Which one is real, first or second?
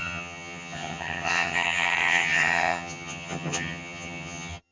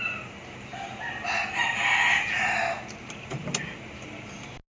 second